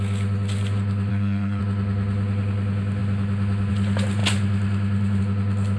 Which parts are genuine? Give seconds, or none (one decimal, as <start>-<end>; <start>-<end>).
0.0-1.1; 1.6-5.8